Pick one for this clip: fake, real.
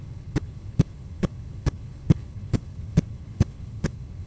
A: fake